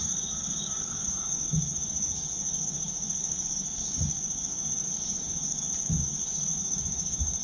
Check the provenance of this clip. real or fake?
fake